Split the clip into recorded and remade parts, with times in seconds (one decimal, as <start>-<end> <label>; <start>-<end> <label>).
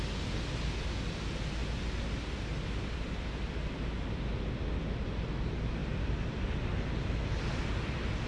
0.0-1.6 recorded; 1.6-3.8 remade; 3.8-5.8 recorded; 5.8-6.9 remade; 6.9-8.3 recorded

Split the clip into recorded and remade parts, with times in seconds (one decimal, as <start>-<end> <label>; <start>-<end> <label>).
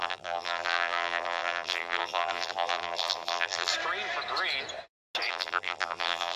0.0-3.7 remade; 3.7-5.3 recorded; 5.3-6.4 remade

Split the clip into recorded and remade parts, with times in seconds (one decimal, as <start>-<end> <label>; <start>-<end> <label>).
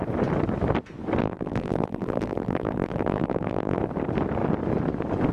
0.0-1.2 recorded; 1.2-3.8 remade; 3.8-5.3 recorded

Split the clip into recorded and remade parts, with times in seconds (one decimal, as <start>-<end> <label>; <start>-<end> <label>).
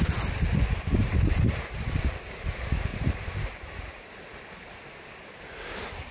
0.0-1.0 recorded; 1.0-2.5 remade; 2.5-2.9 recorded; 2.9-4.2 remade; 4.2-6.1 recorded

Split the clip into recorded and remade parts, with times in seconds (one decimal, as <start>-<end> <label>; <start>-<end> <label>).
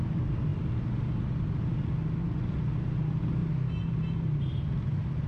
0.0-5.3 recorded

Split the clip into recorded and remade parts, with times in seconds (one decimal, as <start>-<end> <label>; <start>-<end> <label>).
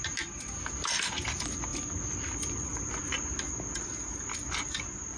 0.0-5.2 recorded